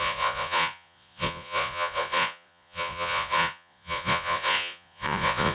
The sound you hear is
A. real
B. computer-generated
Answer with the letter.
B